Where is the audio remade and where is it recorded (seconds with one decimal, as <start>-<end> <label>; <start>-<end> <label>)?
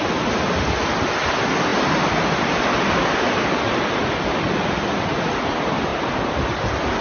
0.0-7.0 recorded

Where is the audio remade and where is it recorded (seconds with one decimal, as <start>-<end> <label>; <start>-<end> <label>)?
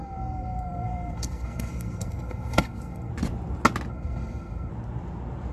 0.0-3.1 remade; 3.1-3.9 recorded; 3.9-4.7 remade; 4.7-5.5 recorded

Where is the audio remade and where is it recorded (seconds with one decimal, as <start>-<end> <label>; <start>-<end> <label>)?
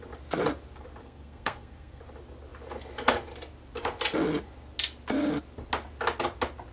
0.0-1.0 recorded; 1.0-2.0 remade; 2.0-6.7 recorded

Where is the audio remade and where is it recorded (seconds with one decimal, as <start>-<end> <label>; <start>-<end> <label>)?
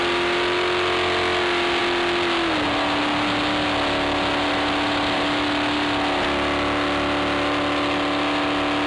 0.0-8.9 recorded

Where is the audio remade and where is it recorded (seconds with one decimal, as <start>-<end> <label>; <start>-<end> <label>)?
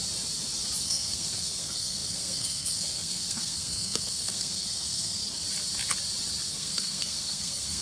0.0-0.8 recorded; 0.8-5.2 remade; 5.2-6.5 recorded; 6.5-7.8 remade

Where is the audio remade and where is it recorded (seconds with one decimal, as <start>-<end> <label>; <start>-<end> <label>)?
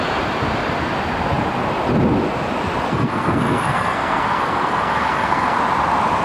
0.0-2.9 recorded; 2.9-5.6 remade; 5.6-6.2 recorded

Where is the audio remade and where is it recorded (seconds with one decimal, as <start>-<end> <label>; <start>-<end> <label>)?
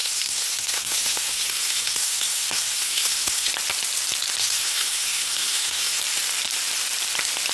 0.0-3.5 remade; 3.5-4.4 recorded; 4.4-6.0 remade; 6.0-7.5 recorded